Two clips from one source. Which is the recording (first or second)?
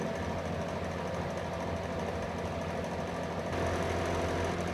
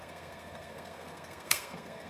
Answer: first